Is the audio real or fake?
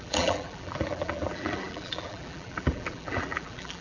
fake